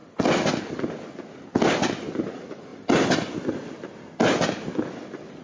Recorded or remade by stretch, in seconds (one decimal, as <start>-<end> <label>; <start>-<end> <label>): 0.0-5.4 recorded